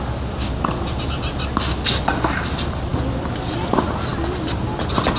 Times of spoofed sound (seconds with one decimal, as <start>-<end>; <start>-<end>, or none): none